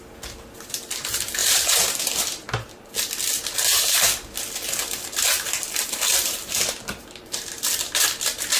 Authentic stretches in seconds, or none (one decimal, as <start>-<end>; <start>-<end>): 0.0-1.4; 2.5-8.6